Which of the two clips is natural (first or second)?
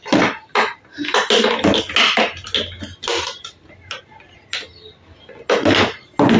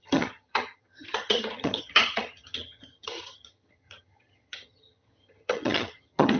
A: first